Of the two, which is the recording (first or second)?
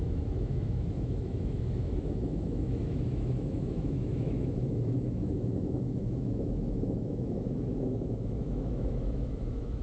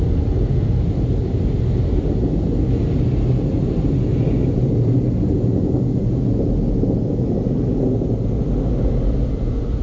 second